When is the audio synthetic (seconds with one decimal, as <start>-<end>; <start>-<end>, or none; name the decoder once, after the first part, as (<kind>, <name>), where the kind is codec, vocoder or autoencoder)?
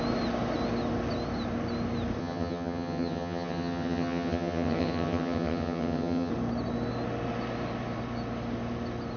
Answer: 2.2-6.3 (vocoder, HiFi-GAN)